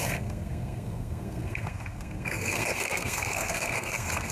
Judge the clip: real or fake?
fake